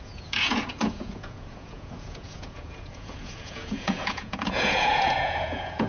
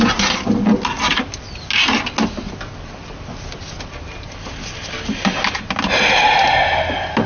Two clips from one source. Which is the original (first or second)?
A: second